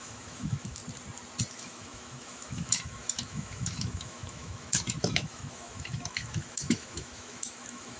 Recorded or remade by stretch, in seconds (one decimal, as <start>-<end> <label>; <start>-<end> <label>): 0.0-0.8 remade; 0.8-1.5 recorded; 1.5-8.0 remade